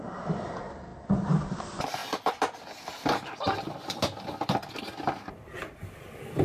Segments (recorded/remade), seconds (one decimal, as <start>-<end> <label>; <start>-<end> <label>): 0.0-6.4 recorded